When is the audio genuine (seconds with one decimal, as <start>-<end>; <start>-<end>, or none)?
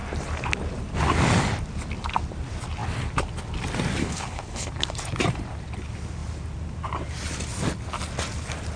0.0-4.0; 4.7-8.8